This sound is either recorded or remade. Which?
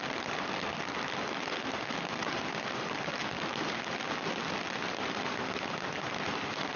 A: recorded